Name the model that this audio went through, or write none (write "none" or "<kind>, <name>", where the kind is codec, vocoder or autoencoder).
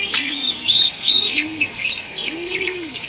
codec, SNAC